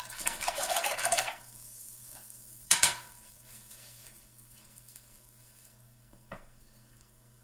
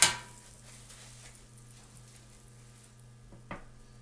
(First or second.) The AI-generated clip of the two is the first